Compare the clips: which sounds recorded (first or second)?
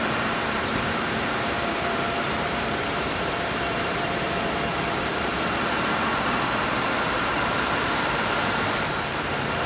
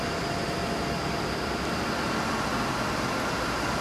second